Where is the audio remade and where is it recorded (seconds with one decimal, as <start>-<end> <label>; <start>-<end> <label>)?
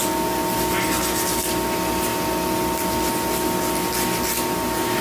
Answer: 0.0-5.0 recorded